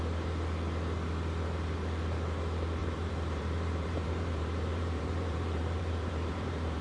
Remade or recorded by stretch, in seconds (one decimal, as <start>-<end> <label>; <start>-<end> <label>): 0.0-2.8 recorded; 2.8-6.8 remade